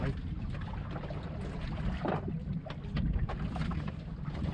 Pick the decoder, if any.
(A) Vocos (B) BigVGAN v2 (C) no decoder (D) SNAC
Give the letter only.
C